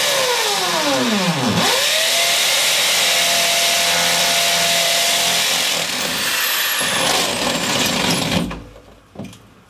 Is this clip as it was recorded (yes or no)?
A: yes